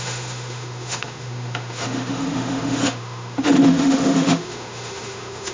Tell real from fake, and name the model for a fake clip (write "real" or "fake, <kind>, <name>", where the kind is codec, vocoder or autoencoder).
fake, autoencoder, DAC-VAE